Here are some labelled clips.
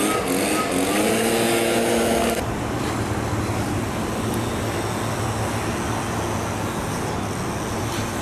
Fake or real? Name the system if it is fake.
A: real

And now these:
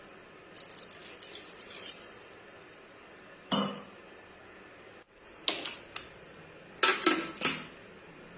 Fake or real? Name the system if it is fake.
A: real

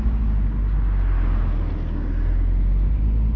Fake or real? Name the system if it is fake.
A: real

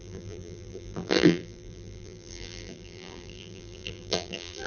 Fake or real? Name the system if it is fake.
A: fake, vocoder, BigVGAN v2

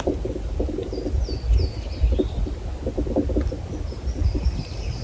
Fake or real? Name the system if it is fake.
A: real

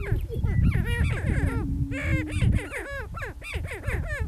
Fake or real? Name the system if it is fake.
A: real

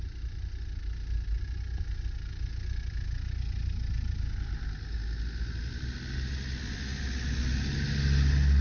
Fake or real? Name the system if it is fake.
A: real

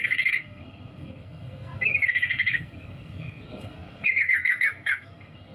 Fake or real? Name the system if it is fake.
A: fake, codec, SNAC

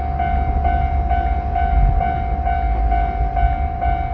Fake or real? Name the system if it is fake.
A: real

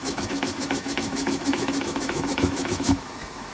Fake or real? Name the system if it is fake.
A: fake, autoencoder, DAC-VAE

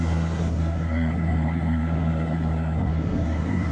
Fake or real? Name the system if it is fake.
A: fake, codec, SNAC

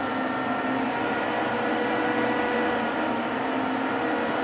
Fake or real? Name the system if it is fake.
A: real